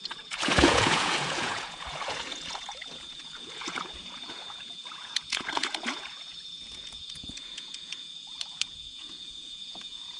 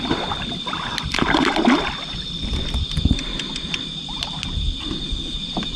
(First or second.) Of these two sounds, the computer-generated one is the first